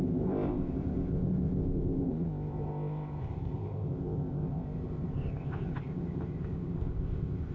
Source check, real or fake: fake